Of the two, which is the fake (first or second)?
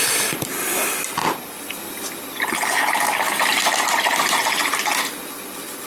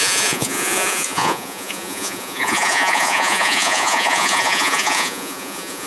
second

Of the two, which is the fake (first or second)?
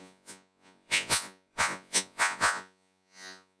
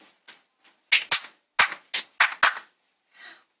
first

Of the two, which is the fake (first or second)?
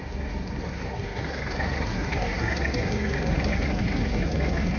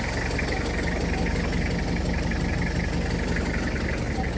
first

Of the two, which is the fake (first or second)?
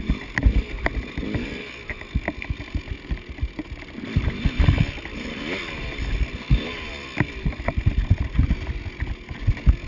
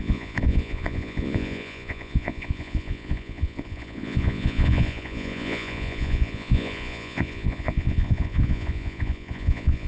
second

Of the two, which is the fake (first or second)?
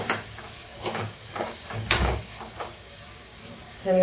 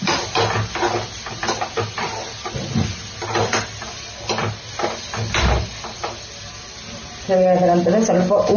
first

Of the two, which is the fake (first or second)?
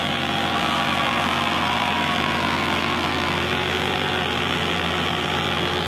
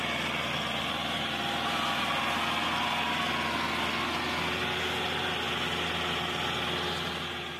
first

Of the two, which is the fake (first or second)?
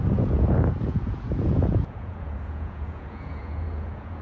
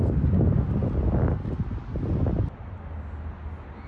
first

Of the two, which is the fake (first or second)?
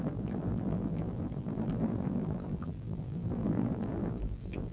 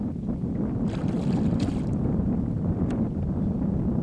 first